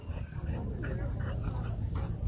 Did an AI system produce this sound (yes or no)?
no